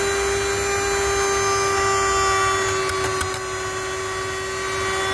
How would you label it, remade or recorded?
recorded